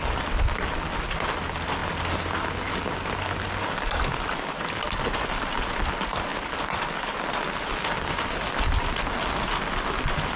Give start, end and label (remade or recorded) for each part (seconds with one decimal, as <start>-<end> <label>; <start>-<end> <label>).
0.0-10.4 recorded